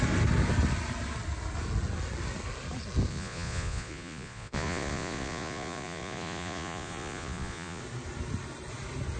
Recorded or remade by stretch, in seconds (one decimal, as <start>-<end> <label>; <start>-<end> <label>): 0.0-3.1 recorded; 3.1-7.8 remade; 7.8-9.2 recorded